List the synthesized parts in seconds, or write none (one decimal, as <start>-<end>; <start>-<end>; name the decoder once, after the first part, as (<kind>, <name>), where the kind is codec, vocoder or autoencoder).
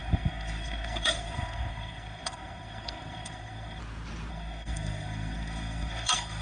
0.0-3.8 (codec, SNAC); 4.3-6.4